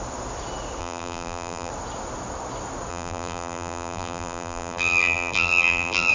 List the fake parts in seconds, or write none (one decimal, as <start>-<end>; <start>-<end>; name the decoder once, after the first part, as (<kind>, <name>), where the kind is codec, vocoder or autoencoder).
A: 0.8-1.7 (vocoder, BigVGAN v2); 2.9-6.1